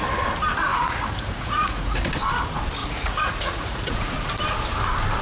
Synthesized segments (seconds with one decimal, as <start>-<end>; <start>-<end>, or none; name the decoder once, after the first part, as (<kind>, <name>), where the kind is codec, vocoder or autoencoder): 0.7-2.0 (vocoder, Vocos); 2.8-4.2